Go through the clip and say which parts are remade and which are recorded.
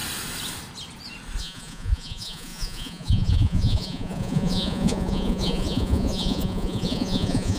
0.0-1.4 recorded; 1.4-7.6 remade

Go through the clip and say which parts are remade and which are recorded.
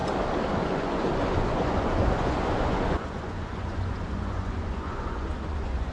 0.0-0.6 recorded; 0.6-5.9 remade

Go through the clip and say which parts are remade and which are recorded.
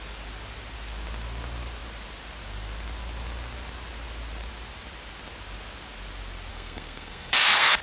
0.0-6.5 recorded; 6.5-7.8 remade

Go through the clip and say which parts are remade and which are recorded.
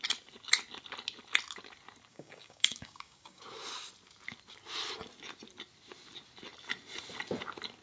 0.0-2.1 recorded; 2.1-3.4 remade; 3.4-7.8 recorded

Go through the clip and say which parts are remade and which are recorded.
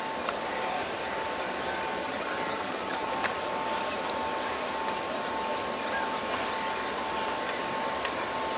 0.0-2.0 recorded; 2.0-3.1 remade; 3.1-8.6 recorded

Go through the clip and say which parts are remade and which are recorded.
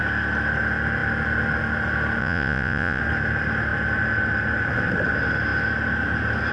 0.0-2.2 recorded; 2.2-3.0 remade; 3.0-6.5 recorded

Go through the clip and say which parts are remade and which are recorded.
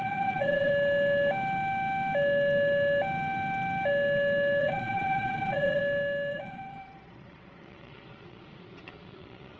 0.0-0.7 remade; 0.7-4.6 recorded; 4.6-5.8 remade; 5.8-6.3 recorded; 6.3-9.6 remade